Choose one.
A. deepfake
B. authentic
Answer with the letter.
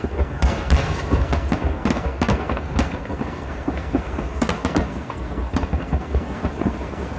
A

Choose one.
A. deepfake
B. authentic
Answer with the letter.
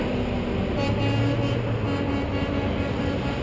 B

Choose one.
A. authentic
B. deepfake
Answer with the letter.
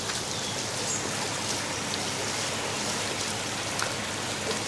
A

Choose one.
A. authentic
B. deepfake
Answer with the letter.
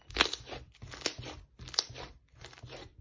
A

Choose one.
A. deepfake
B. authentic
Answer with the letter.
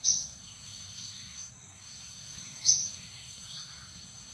A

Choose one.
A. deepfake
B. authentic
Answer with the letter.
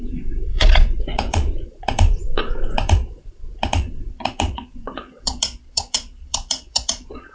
A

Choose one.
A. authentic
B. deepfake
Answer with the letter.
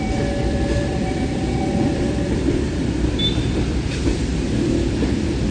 B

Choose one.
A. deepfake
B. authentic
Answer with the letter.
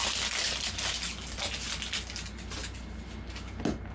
B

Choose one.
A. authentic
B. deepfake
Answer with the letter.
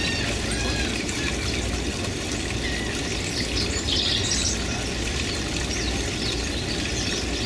A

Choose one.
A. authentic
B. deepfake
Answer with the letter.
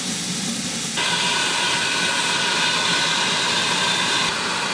A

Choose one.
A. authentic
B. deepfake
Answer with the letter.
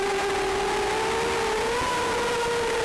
A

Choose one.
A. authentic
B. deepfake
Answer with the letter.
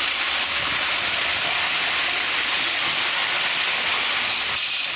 A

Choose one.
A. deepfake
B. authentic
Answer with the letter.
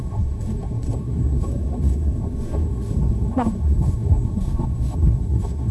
A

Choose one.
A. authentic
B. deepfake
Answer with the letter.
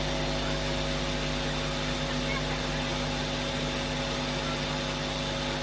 A